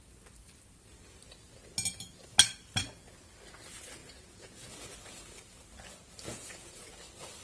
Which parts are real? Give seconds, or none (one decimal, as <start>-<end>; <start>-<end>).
0.0-4.0; 5.2-6.3; 6.9-7.4